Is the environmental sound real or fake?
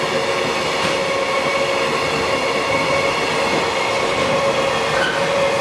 real